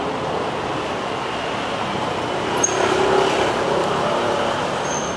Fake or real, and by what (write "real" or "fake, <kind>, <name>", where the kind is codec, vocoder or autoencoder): real